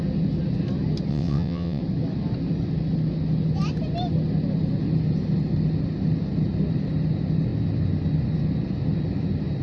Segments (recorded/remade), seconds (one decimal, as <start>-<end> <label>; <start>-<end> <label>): 0.0-1.1 recorded; 1.1-1.8 remade; 1.8-9.6 recorded